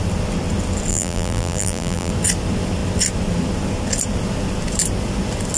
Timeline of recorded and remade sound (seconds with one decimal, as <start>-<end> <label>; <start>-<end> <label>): 0.0-0.9 recorded; 0.9-2.1 remade; 2.1-5.6 recorded